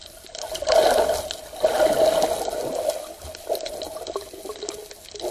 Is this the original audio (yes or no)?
yes